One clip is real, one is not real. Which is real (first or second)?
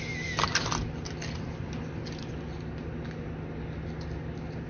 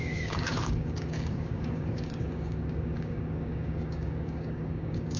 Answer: first